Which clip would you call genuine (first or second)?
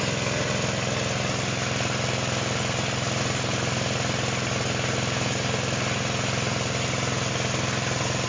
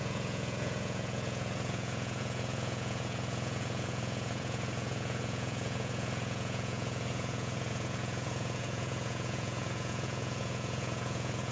first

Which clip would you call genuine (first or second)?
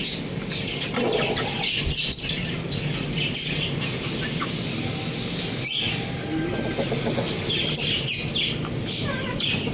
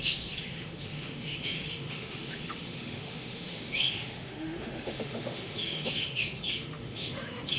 first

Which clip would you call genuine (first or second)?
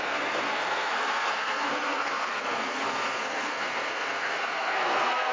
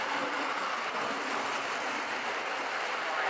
second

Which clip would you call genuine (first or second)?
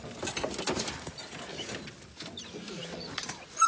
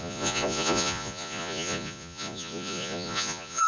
first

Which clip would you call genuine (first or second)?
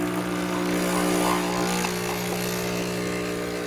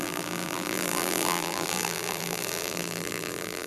first